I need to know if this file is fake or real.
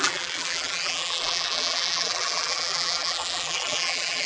fake